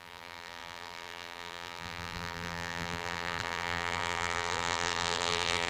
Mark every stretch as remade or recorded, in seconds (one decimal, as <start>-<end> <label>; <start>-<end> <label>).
0.0-5.7 remade